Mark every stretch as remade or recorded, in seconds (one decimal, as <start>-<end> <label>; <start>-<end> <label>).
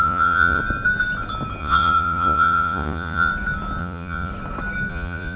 0.0-0.6 remade; 0.6-1.6 recorded; 1.6-3.3 remade; 3.3-3.8 recorded; 3.8-4.3 remade; 4.3-4.9 recorded; 4.9-5.4 remade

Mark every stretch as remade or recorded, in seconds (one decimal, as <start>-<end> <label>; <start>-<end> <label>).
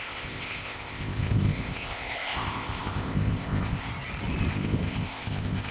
0.0-3.9 remade; 3.9-4.5 recorded; 4.5-5.7 remade